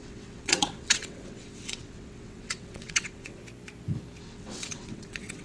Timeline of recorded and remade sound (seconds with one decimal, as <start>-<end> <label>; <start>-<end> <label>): 0.0-3.4 remade; 3.4-4.2 recorded; 4.2-5.4 remade